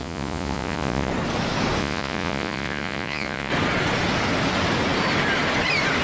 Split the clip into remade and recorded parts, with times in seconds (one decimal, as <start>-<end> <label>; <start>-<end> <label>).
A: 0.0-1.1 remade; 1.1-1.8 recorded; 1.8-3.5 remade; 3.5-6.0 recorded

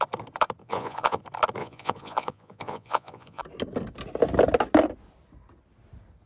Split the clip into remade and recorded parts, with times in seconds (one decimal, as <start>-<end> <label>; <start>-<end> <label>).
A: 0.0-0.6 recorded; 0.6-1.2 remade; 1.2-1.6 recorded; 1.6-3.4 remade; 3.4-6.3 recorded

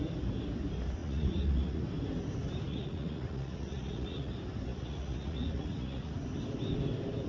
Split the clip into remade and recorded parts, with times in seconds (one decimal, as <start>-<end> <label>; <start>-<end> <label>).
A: 0.0-1.0 recorded; 1.0-1.8 remade; 1.8-2.7 recorded; 2.7-4.3 remade; 4.3-4.7 recorded; 4.7-6.1 remade; 6.1-7.3 recorded

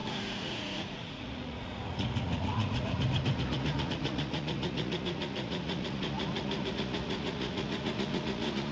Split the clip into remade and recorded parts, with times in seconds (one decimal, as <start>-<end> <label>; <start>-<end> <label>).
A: 0.0-8.7 remade

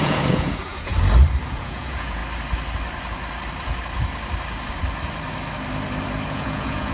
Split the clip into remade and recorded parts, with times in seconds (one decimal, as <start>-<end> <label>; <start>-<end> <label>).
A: 0.0-0.9 remade; 0.9-1.5 recorded; 1.5-2.2 remade; 2.2-6.3 recorded; 6.3-6.9 remade

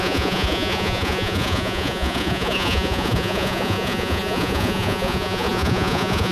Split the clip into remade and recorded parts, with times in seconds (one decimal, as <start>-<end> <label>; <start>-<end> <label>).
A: 0.0-6.3 remade